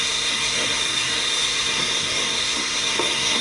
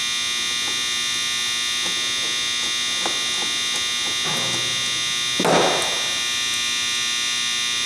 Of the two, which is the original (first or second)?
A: second